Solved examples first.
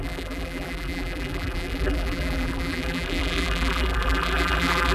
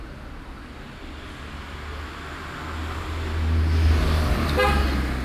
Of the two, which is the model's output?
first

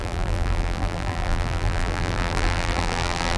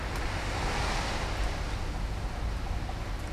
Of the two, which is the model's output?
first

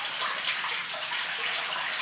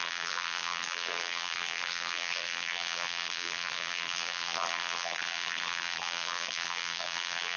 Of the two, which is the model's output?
second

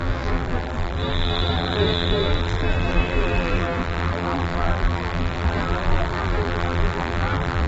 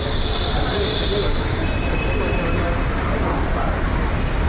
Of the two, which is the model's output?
first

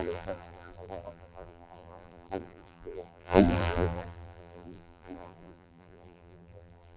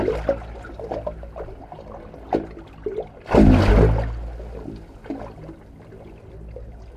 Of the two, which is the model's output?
first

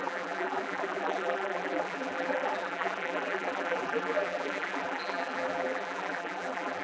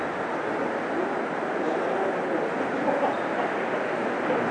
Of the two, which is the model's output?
first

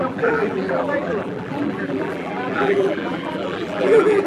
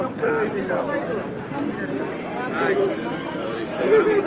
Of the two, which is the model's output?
first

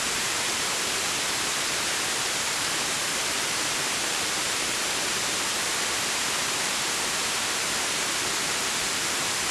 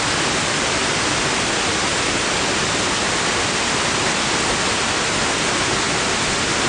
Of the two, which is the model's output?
first